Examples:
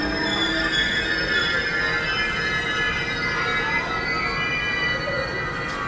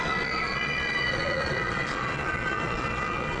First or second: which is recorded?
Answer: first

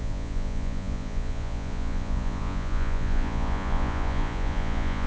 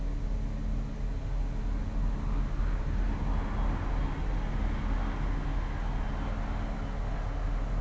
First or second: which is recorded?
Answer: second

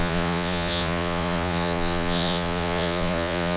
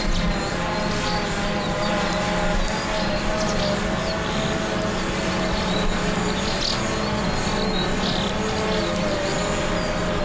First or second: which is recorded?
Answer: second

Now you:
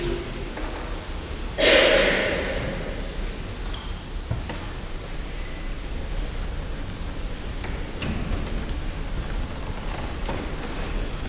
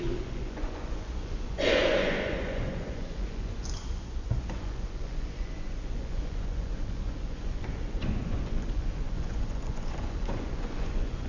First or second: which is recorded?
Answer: first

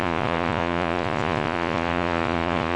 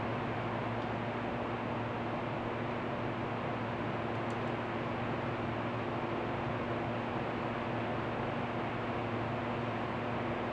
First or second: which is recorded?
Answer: second